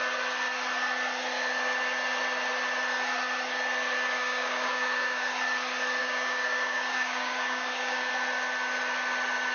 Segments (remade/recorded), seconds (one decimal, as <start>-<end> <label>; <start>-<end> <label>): 0.0-4.2 recorded; 4.2-5.3 remade; 5.3-6.0 recorded; 6.0-8.1 remade; 8.1-9.5 recorded